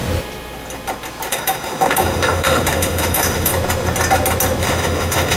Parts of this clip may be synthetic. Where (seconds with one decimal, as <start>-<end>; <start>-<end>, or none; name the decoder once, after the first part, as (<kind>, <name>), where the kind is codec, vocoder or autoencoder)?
1.3-3.5 (autoencoder, DAC-VAE); 4.6-5.4